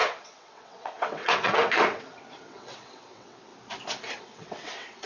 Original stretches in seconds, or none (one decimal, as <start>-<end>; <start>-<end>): 3.5-4.2